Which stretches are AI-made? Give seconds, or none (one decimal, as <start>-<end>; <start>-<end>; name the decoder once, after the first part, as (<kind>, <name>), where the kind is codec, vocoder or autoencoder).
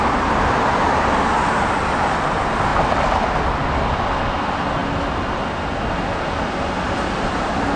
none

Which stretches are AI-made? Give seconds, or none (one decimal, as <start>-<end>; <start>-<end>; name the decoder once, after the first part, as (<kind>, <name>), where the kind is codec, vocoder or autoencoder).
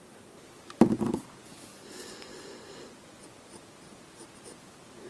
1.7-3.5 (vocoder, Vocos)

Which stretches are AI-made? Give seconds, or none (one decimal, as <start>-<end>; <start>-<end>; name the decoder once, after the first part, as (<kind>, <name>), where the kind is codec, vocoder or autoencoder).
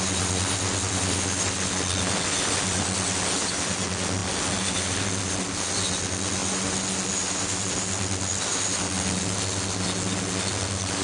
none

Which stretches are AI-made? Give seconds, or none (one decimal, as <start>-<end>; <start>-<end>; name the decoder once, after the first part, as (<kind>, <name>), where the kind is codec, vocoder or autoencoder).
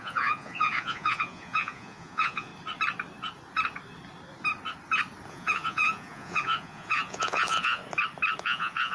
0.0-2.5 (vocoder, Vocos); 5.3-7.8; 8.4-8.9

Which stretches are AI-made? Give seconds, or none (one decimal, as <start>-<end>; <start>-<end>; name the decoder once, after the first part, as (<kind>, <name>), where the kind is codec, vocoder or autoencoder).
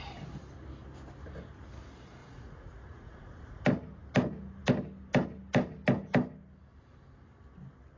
2.2-3.6 (vocoder, Vocos)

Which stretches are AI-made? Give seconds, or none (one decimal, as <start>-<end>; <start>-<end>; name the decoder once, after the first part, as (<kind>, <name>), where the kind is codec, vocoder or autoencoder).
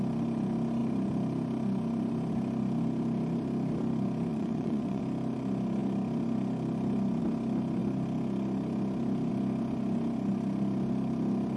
4.3-5.0 (vocoder, Vocos)